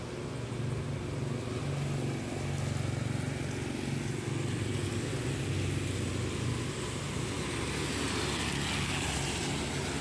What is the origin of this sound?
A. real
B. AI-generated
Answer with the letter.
A